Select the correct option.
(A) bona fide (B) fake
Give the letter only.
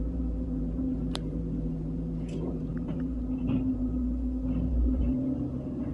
B